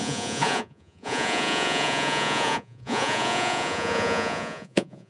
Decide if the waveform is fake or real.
fake